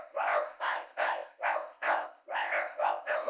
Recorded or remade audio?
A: remade